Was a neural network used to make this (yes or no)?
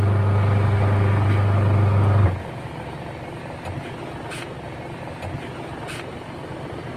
no